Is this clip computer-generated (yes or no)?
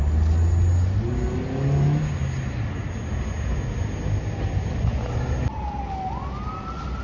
no